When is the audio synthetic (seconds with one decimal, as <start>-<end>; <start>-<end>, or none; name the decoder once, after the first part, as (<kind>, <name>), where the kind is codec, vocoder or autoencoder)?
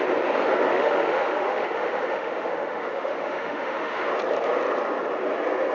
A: 0.7-4.1 (autoencoder, DAC-VAE)